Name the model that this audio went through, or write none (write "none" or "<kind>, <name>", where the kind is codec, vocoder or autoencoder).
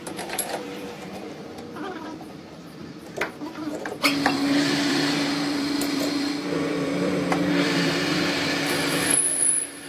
vocoder, BigVGAN v2